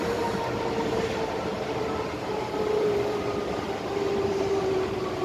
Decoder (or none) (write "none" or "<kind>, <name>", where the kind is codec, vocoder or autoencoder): vocoder, BigVGAN v2